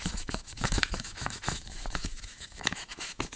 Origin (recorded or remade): remade